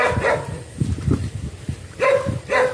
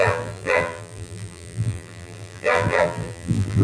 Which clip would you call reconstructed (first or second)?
second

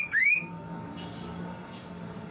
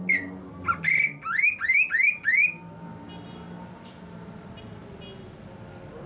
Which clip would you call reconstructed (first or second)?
first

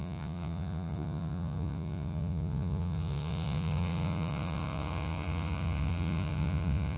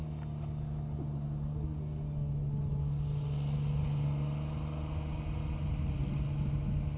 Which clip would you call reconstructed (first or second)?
first